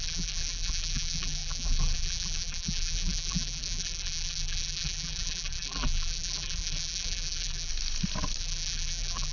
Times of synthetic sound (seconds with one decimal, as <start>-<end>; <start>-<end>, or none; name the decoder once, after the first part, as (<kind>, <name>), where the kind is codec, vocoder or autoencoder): 0.0-7.7 (vocoder, BigVGAN v2); 8.4-9.3